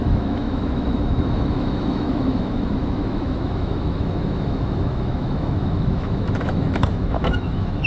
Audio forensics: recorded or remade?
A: remade